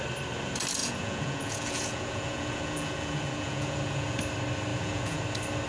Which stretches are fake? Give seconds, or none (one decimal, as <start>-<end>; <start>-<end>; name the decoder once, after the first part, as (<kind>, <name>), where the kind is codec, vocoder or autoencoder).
0.8-4.2 (vocoder, Vocos); 4.7-5.2